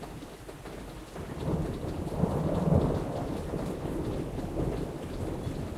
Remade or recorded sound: recorded